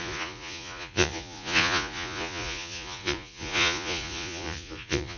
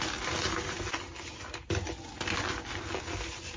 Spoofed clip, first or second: first